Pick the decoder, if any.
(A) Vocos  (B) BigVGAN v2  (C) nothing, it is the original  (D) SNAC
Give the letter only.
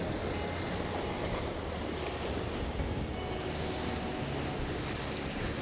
C